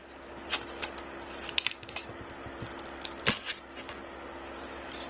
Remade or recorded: recorded